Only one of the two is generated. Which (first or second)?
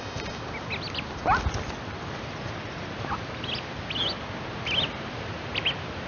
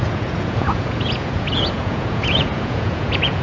second